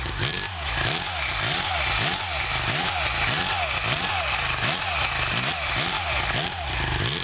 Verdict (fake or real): real